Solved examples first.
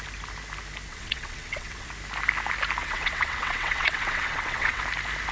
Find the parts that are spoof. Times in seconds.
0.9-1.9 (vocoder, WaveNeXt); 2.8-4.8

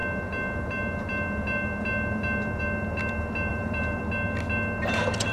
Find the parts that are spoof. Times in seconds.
3.5-4.0 (vocoder, BigVGAN v2)

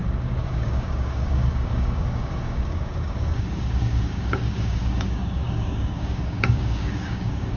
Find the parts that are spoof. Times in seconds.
0.0-7.6 (codec, DAC)

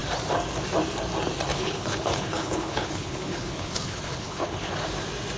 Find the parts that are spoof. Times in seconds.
1.5-4.7 (codec, HILCodec)

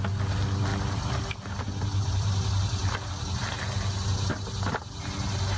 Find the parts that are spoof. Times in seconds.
2.0-2.5 (vocoder, BigVGAN v2)

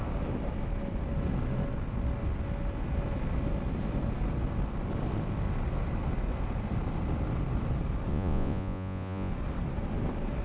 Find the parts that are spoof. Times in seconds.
8.1-9.3 (vocoder, Vocos)

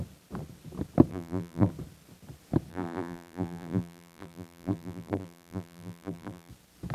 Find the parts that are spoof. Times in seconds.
1.1-1.7 (vocoder, BigVGAN v2); 2.7-6.5

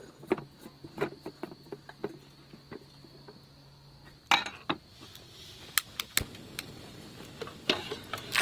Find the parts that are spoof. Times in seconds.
none